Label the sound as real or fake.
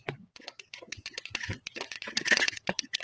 fake